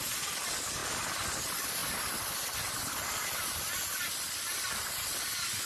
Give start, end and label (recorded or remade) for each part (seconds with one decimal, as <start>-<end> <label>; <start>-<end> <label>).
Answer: 0.0-5.7 recorded